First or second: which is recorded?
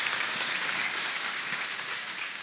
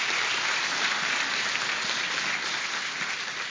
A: second